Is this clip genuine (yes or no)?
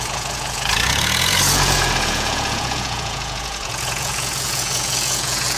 no